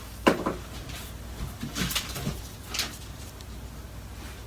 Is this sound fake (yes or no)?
no